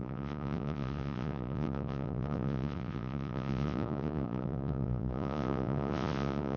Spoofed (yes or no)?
yes